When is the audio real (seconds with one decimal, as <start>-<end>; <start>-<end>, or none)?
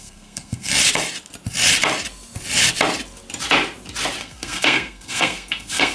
0.7-4.2